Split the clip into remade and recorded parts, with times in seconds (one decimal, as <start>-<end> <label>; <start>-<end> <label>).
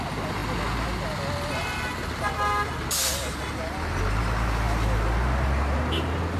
0.0-6.4 recorded